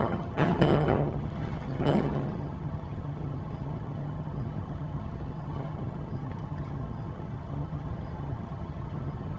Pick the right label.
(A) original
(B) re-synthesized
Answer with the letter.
B